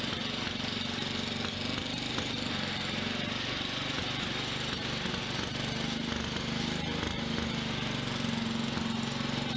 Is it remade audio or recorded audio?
recorded